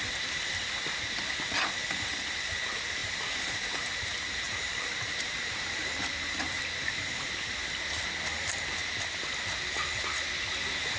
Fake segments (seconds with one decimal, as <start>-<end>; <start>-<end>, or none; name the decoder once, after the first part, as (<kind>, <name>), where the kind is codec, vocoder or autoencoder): 3.0-7.3 (vocoder, BigVGAN v2)